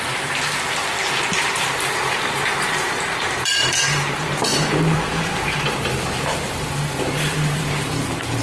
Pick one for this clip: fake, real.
fake